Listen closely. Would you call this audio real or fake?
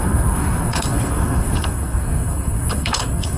fake